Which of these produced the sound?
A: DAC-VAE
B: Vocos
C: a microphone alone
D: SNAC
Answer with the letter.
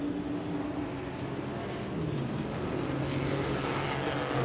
C